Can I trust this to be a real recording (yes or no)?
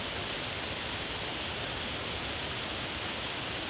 yes